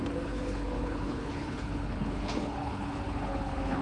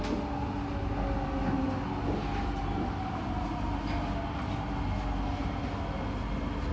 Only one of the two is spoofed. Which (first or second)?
first